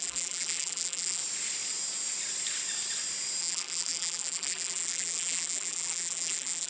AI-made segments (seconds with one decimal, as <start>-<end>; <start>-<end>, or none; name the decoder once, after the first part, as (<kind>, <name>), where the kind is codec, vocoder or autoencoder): 0.0-1.2 (vocoder, BigVGAN v2); 3.4-6.7